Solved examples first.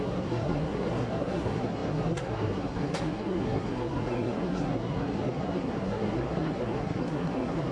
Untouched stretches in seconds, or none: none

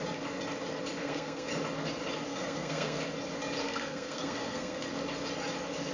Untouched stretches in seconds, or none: 0.0-1.0; 1.5-2.3; 3.0-3.6; 4.9-5.9

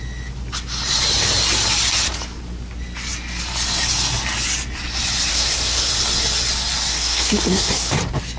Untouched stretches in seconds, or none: 0.0-5.3; 5.9-6.9; 7.9-8.4